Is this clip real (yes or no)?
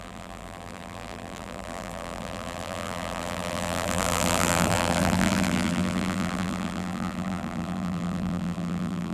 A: no